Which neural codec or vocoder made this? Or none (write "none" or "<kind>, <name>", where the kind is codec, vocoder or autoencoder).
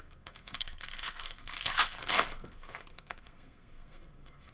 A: codec, SNAC